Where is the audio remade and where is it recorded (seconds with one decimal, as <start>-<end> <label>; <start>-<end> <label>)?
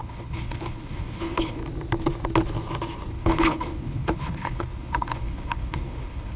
0.0-1.6 remade; 1.6-3.1 recorded; 3.1-6.4 remade